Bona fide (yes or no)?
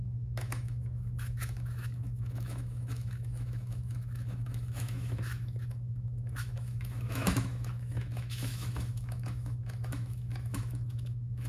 no